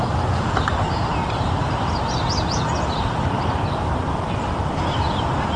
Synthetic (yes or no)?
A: no